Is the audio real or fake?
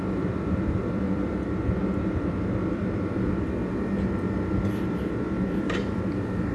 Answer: fake